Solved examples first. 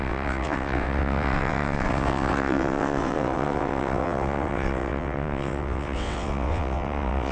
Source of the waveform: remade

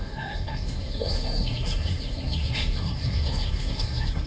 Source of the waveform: remade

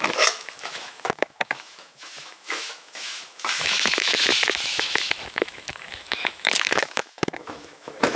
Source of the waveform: remade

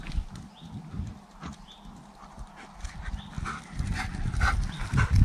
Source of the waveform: recorded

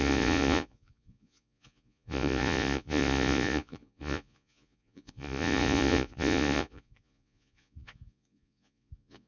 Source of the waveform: remade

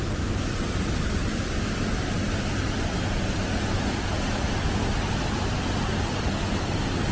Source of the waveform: recorded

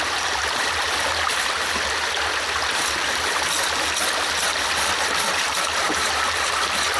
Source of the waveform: recorded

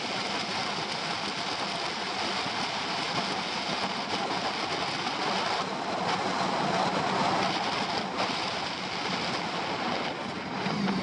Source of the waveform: recorded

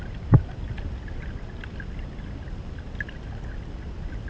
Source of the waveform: recorded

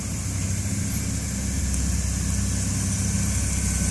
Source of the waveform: recorded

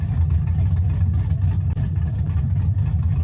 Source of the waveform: recorded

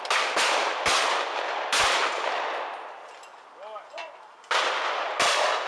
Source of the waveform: recorded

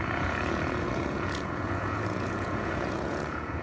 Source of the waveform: remade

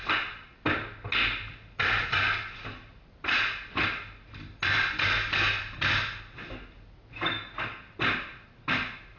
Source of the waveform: recorded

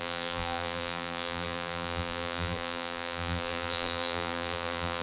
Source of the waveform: remade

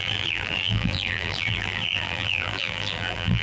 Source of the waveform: remade